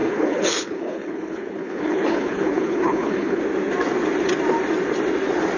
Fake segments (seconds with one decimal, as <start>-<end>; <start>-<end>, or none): 0.0-3.4

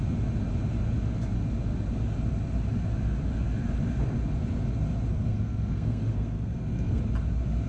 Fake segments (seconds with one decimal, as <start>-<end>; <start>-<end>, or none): 5.1-7.0